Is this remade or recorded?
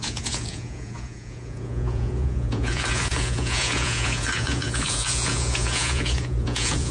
remade